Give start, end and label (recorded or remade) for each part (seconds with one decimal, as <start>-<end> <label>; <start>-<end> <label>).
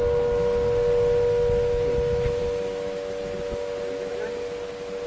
0.0-5.1 recorded